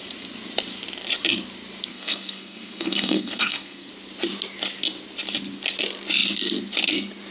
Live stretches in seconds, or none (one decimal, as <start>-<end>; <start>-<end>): 0.0-1.9; 3.9-7.3